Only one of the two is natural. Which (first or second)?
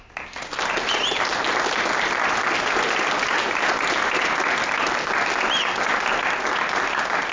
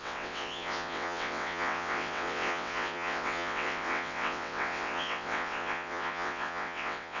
first